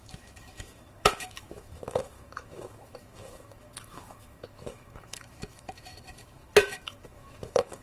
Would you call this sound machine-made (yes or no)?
yes